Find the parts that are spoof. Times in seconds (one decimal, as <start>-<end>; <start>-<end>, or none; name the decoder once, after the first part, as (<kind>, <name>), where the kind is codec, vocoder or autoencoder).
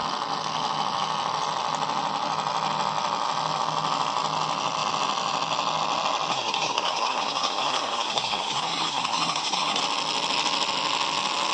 6.3-9.8 (codec, SNAC)